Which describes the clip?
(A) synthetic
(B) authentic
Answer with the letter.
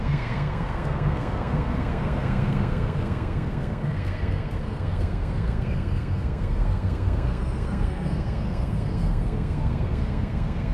A